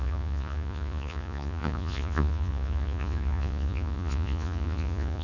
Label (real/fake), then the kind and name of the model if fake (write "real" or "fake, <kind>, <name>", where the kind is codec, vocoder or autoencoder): fake, vocoder, Vocos